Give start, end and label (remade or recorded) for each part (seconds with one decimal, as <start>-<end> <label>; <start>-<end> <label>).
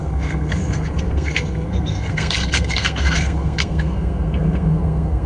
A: 0.0-5.3 remade